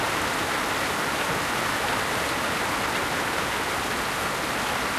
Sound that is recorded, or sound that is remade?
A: recorded